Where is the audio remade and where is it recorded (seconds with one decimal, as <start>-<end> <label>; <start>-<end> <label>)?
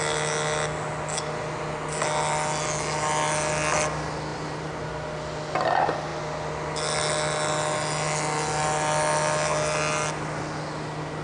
0.0-4.3 recorded; 4.3-4.9 remade; 4.9-11.2 recorded